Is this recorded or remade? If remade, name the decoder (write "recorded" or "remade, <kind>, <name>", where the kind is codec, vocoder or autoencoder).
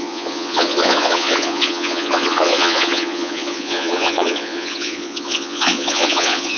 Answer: remade, vocoder, Vocos